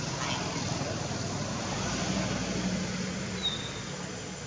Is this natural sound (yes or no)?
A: yes